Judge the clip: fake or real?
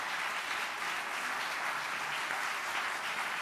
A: real